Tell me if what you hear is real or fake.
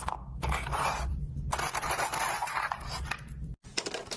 real